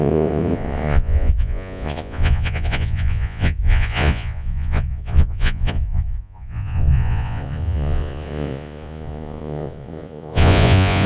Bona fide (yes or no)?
no